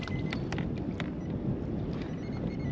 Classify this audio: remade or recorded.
recorded